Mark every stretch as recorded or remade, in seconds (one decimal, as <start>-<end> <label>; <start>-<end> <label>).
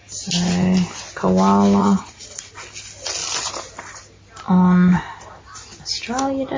0.0-1.8 recorded; 1.8-2.4 remade; 2.4-6.6 recorded